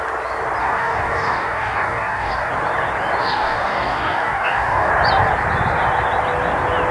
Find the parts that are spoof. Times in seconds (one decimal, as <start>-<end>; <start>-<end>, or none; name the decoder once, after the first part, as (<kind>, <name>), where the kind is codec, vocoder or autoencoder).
0.6-2.5 (codec, DAC); 3.2-4.9